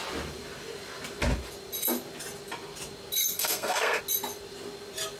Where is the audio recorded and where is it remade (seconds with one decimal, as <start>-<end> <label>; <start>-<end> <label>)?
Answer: 0.0-3.2 recorded; 3.2-4.0 remade; 4.0-5.2 recorded